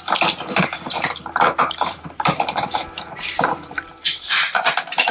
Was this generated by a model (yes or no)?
yes